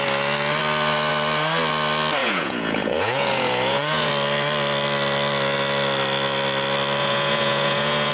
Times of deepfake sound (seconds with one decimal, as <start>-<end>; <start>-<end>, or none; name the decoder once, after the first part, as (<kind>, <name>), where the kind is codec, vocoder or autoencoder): 2.2-4.1 (vocoder, Vocos); 7.0-8.1